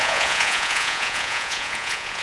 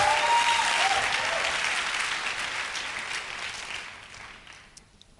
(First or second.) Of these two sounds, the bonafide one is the second